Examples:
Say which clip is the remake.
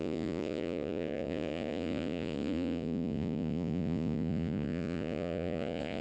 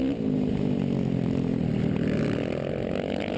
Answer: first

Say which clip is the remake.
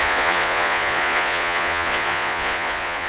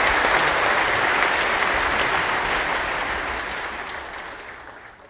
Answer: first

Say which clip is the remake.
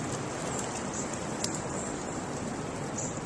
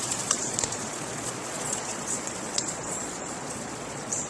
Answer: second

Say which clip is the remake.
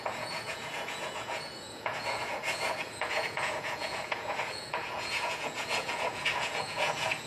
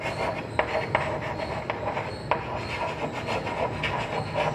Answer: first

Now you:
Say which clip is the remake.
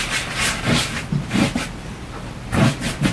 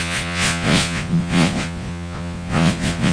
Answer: second